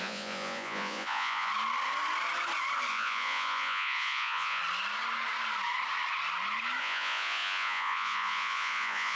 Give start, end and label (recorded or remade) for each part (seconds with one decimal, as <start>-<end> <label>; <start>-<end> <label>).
0.0-1.5 remade; 1.5-2.9 recorded; 2.9-4.6 remade; 4.6-6.8 recorded; 6.8-9.2 remade